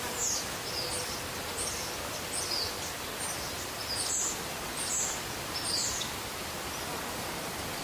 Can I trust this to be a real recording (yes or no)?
no